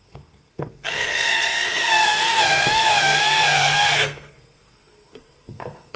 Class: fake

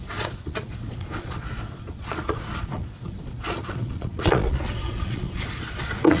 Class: fake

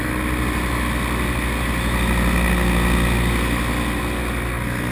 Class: real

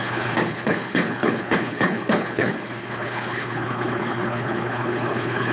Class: fake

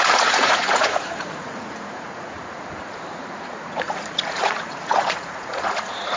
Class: fake